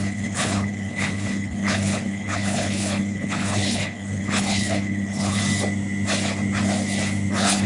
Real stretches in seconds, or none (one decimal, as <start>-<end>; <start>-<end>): 5.4-7.3